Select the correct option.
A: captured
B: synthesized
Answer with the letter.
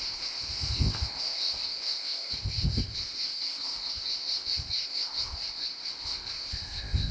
B